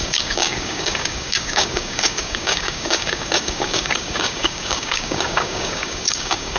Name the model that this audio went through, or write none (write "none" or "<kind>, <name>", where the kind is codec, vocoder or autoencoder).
codec, DAC